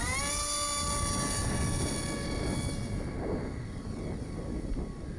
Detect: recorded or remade recorded